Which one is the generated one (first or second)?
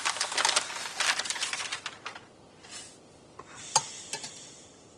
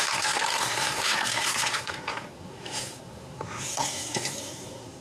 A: second